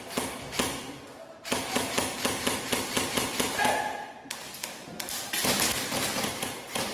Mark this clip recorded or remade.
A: recorded